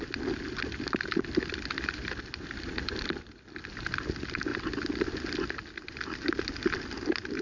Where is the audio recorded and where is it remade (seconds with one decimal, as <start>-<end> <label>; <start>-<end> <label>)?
0.0-7.4 recorded